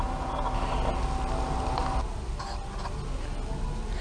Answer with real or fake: real